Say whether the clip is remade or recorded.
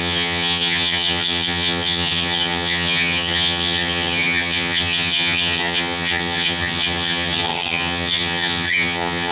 remade